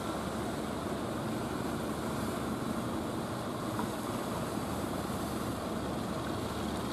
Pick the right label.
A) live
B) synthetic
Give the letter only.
A